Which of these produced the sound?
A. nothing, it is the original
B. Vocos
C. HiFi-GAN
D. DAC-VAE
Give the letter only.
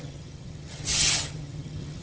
C